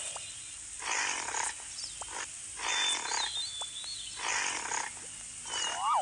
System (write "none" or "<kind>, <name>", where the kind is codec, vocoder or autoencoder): none